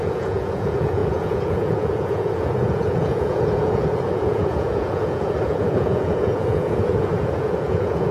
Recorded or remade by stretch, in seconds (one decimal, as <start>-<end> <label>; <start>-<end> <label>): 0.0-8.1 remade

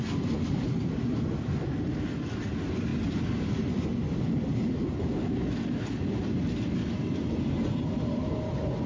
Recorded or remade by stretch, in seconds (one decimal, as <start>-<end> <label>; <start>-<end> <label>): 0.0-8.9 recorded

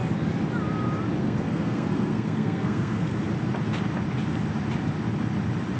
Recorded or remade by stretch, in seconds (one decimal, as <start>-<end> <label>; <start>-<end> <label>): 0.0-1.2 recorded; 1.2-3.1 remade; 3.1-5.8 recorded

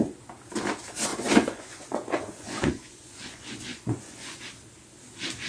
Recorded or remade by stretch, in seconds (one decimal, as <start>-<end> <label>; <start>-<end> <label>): 0.0-1.1 recorded; 1.1-4.4 remade; 4.4-5.5 recorded